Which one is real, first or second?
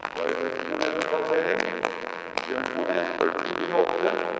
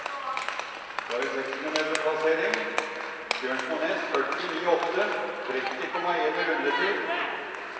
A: second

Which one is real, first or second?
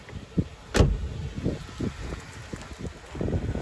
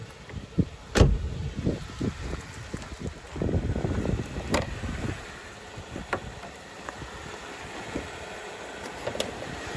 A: first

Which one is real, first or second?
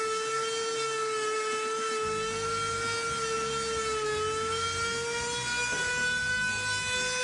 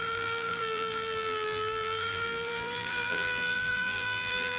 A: first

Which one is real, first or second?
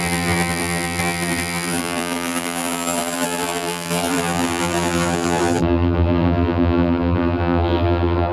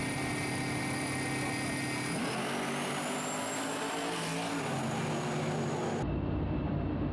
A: second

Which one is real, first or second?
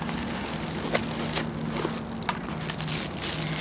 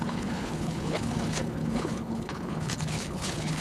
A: first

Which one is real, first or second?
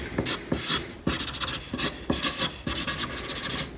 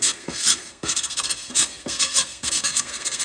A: first